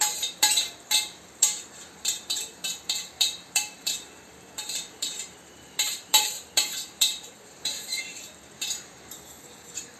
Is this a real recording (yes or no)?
no